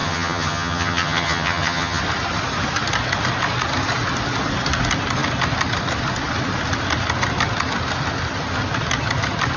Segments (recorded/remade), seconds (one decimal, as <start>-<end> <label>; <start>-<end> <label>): 0.0-2.0 remade; 2.0-9.6 recorded